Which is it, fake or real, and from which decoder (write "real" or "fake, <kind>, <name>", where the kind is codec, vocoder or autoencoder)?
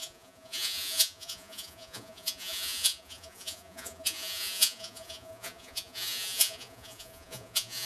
fake, vocoder, Vocos